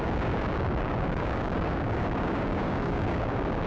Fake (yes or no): yes